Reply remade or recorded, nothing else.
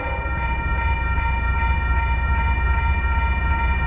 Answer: recorded